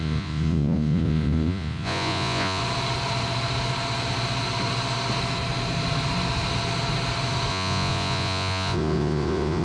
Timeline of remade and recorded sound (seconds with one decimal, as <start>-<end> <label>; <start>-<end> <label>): 0.0-2.6 remade; 2.6-7.5 recorded; 7.5-9.6 remade